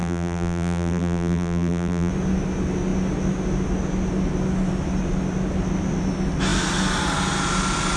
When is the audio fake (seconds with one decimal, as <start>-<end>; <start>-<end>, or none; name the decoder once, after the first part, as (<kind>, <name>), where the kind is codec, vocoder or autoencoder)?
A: 0.0-2.1 (vocoder, BigVGAN v2)